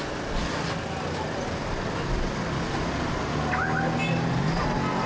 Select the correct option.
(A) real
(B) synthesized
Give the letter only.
A